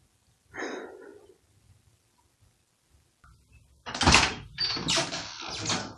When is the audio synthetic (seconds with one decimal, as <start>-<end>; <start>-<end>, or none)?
none